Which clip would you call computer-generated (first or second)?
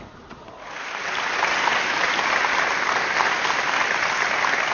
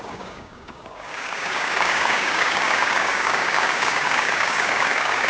second